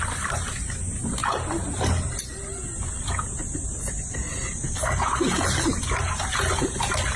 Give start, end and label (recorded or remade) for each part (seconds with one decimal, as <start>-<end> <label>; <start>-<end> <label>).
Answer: 0.0-7.2 recorded